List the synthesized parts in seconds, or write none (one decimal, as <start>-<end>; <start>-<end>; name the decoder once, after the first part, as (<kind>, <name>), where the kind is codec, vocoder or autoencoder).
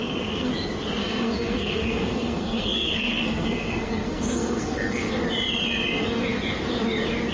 0.0-0.5 (codec, SNAC); 1.0-5.1